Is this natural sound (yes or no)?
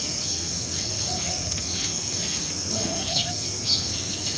no